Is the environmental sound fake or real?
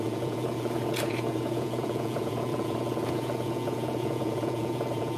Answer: fake